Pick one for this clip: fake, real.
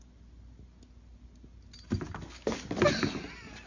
real